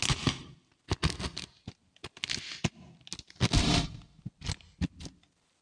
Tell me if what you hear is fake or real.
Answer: real